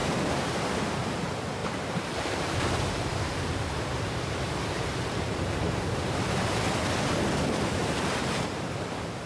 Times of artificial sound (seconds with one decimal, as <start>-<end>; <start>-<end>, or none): 1.6-6.3; 7.8-8.8